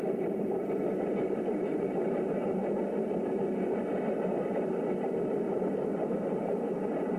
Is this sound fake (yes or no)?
yes